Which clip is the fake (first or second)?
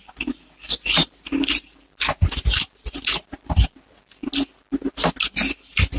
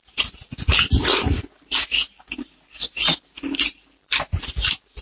second